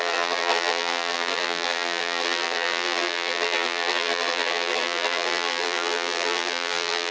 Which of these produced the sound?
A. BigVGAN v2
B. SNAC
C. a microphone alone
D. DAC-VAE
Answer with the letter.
A